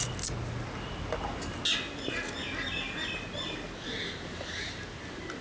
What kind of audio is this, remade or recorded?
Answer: recorded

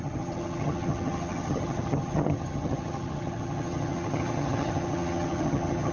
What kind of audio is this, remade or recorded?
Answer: remade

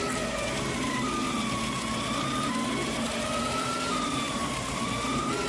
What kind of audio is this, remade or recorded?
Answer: recorded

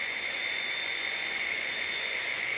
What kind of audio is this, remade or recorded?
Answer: remade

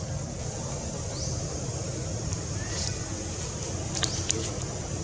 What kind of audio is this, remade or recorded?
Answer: recorded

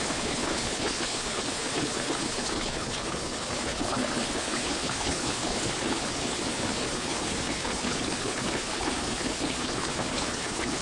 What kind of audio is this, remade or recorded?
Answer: remade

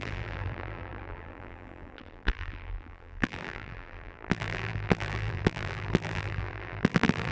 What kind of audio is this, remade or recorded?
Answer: remade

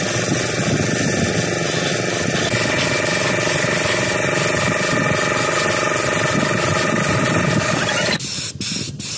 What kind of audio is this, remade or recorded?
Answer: recorded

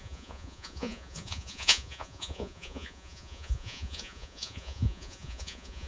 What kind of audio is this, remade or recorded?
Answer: remade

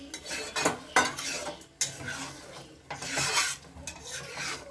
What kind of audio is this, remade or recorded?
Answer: recorded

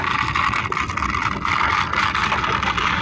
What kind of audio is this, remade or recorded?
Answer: recorded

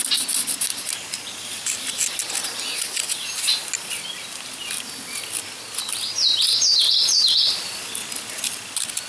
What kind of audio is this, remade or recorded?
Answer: recorded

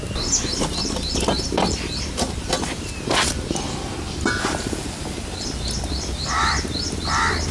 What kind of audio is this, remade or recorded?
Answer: recorded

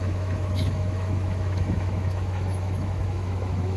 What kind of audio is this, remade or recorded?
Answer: remade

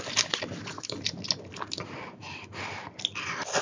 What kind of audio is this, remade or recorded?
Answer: recorded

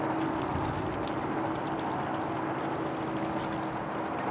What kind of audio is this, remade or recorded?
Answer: recorded